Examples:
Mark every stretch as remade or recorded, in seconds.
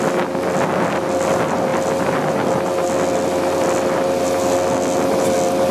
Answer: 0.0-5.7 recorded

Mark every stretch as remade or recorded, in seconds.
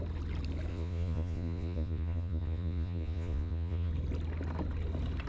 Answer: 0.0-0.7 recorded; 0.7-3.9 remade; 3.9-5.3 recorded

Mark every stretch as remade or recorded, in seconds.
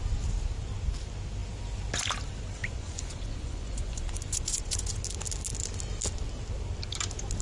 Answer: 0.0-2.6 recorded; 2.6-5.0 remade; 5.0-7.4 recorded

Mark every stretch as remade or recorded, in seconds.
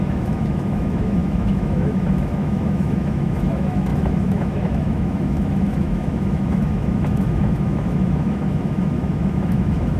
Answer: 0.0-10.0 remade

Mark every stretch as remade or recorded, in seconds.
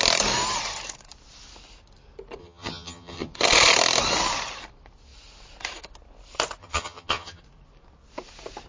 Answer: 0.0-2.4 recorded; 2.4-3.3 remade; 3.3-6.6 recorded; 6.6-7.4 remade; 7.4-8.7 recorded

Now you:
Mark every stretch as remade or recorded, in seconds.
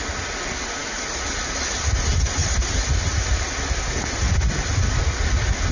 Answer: 0.0-5.7 recorded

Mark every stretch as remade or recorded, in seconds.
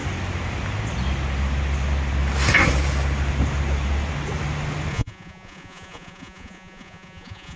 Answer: 0.0-4.9 recorded; 4.9-7.6 remade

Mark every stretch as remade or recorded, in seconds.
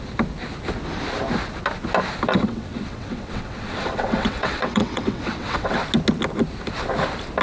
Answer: 0.0-2.3 recorded; 2.3-5.8 remade; 5.8-7.4 recorded